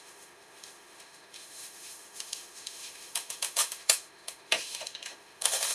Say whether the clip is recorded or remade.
remade